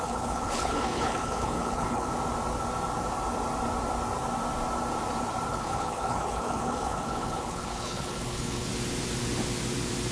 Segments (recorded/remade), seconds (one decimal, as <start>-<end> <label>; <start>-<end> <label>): 0.0-2.1 remade; 2.1-5.5 recorded; 5.5-8.7 remade; 8.7-10.1 recorded

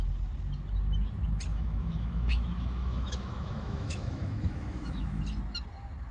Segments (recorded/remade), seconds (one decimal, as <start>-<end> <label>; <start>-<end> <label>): 0.0-1.5 recorded; 1.5-5.2 remade; 5.2-6.1 recorded

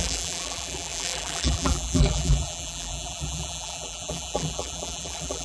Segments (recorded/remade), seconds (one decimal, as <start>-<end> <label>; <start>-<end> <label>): 0.0-5.4 remade

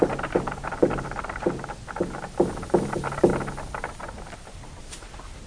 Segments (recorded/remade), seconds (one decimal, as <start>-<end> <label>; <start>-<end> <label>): 0.0-5.5 recorded